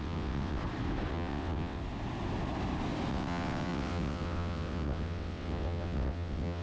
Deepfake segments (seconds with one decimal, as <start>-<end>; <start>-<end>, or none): 0.0-0.6; 1.1-1.8; 3.1-6.6